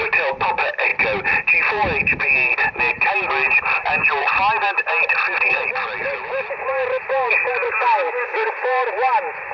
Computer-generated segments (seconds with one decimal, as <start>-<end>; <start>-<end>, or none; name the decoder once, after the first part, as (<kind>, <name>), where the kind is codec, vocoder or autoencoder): none